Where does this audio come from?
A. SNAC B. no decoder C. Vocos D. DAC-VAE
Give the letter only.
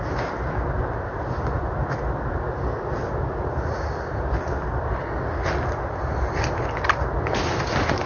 B